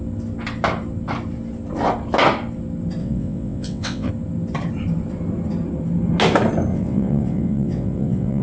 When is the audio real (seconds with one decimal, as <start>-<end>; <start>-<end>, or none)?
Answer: 0.0-3.0; 4.1-6.7